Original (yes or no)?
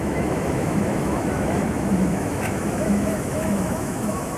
no